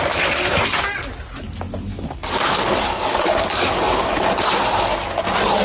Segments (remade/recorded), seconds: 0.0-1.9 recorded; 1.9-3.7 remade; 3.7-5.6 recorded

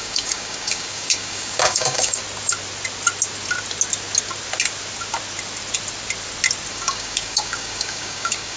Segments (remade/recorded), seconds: 0.0-2.2 remade; 2.2-6.7 recorded; 6.7-8.6 remade

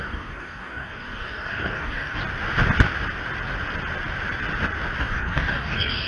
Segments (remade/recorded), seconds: 0.0-2.2 remade; 2.2-5.0 recorded; 5.0-6.1 remade

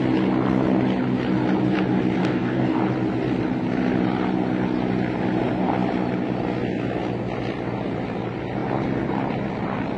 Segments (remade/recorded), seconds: 0.0-2.2 recorded; 2.2-2.8 remade; 2.8-10.0 recorded